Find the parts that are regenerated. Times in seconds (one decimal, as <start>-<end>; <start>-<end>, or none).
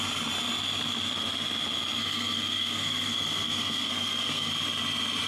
2.0-4.5